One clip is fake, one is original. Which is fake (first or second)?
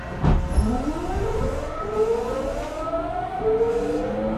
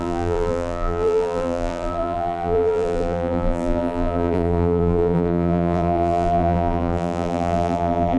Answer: second